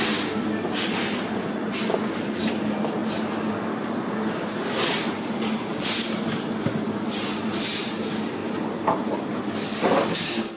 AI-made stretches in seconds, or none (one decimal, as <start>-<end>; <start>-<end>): none